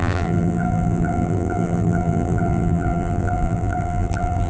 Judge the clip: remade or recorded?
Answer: remade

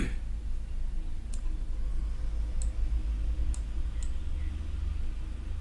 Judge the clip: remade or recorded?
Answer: recorded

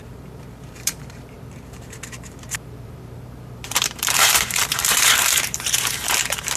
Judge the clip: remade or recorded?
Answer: remade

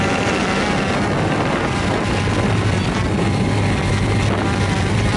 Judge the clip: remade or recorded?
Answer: recorded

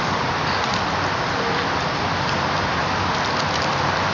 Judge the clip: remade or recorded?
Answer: recorded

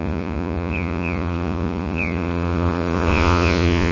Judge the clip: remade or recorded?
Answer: remade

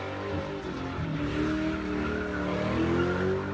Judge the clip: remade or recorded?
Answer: recorded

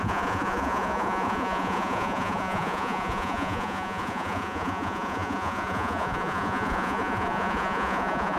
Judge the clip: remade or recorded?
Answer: remade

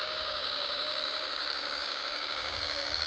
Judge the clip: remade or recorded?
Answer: remade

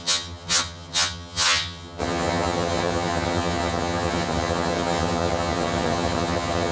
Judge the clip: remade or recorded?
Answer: remade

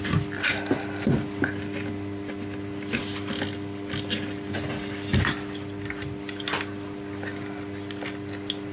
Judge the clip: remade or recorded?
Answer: recorded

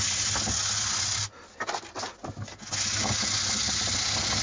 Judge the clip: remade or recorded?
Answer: recorded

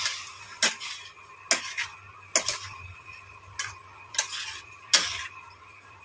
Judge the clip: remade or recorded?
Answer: recorded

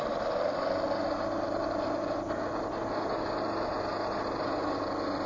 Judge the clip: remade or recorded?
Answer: recorded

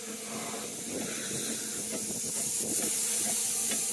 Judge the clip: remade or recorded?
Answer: recorded